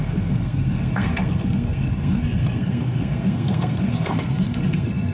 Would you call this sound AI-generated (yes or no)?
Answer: yes